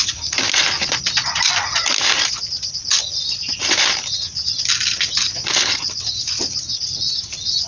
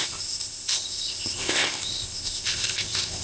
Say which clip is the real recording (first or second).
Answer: first